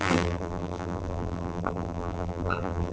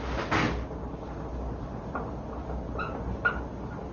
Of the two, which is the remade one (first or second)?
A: first